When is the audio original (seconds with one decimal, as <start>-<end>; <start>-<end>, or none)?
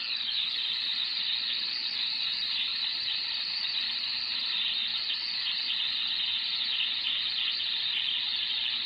0.0-2.7; 4.1-8.9